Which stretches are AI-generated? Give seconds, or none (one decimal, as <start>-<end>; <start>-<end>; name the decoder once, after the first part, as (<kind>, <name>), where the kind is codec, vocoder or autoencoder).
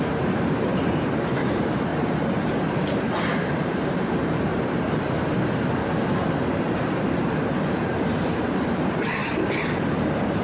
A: 0.0-4.5 (vocoder, BigVGAN v2); 6.4-10.4